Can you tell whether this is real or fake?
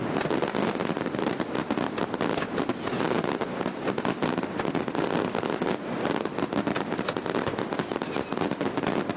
real